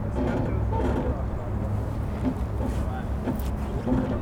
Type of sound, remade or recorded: recorded